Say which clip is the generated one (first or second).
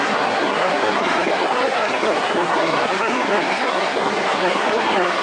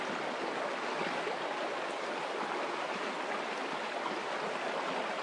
first